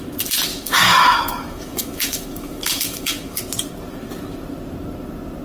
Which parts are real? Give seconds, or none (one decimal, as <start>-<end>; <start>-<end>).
0.0-0.5; 3.4-5.4